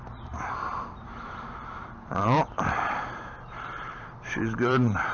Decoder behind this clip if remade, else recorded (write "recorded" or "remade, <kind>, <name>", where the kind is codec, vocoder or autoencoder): remade, vocoder, BigVGAN v2